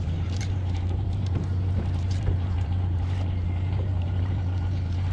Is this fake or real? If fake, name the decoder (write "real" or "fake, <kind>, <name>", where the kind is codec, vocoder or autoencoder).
fake, vocoder, BigVGAN v2